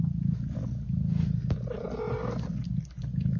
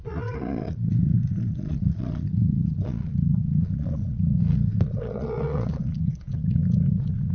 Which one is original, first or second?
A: first